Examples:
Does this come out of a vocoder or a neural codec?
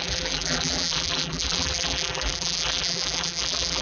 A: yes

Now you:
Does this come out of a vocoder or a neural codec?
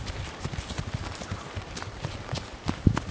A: yes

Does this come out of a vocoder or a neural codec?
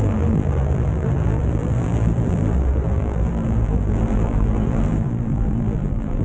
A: yes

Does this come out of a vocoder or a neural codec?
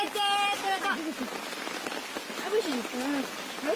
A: no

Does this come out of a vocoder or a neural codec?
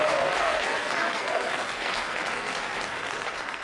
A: yes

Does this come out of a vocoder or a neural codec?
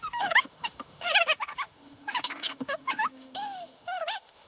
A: yes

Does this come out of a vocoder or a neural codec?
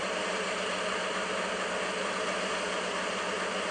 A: no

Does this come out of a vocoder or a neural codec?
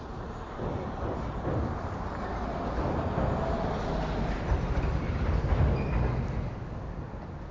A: no